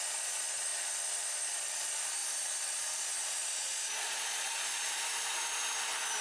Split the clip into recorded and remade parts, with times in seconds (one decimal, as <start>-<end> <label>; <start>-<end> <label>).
0.0-6.2 recorded